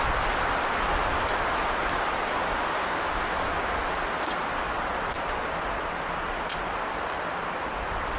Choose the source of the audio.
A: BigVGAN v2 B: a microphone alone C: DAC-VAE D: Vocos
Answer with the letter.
B